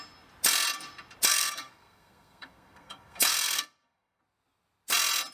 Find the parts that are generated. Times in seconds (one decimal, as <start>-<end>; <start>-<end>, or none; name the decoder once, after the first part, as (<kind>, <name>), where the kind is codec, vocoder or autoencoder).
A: 1.3-4.2 (codec, SNAC)